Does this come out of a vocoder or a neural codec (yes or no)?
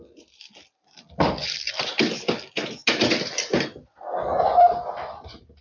no